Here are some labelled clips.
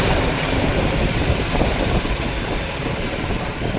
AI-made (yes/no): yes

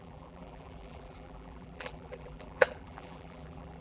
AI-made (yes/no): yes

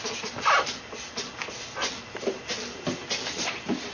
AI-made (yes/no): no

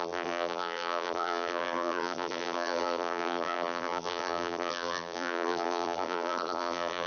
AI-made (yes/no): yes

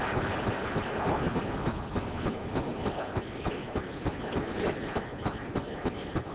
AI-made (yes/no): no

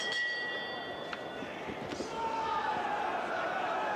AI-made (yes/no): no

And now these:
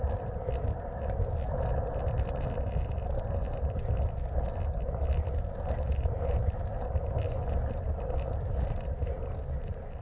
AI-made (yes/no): no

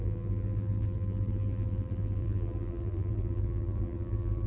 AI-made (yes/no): yes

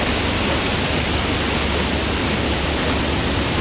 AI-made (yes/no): no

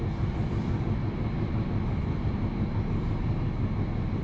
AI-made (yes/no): yes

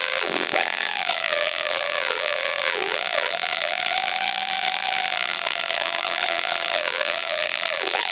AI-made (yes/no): yes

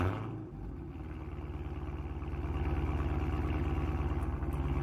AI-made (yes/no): no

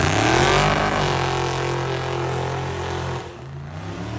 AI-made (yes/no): no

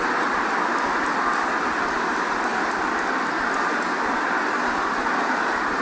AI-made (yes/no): no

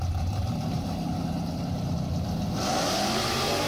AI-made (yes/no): yes